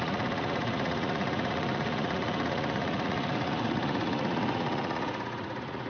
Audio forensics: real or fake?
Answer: fake